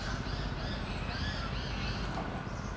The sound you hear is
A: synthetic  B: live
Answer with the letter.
B